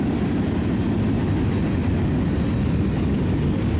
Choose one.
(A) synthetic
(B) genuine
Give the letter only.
B